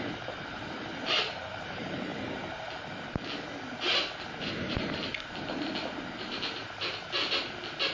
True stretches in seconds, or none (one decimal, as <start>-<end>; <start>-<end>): 2.1-4.2; 5.0-5.9; 6.6-7.9